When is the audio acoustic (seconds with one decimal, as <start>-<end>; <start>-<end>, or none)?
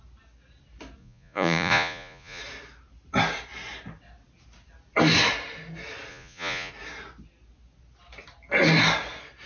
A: 0.0-1.0; 2.4-6.1; 6.7-9.5